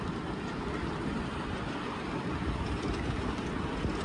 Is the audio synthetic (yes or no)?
no